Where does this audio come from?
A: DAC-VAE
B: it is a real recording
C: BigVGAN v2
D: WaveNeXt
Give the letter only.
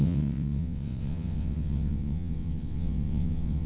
D